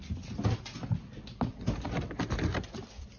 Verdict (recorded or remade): recorded